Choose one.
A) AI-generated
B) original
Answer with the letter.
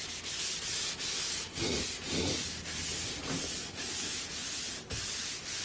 B